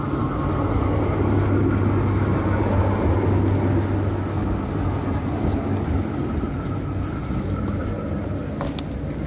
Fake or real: real